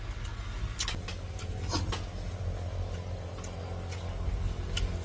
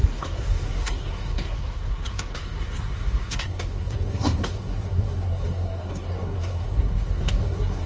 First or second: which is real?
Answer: first